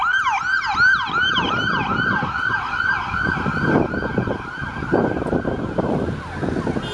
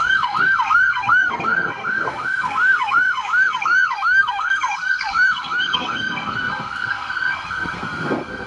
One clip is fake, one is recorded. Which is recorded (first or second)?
first